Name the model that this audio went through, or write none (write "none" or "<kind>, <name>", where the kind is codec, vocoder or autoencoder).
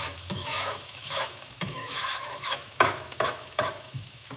autoencoder, DAC-VAE